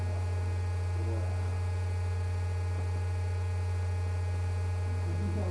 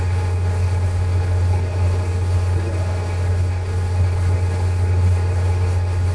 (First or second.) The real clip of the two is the first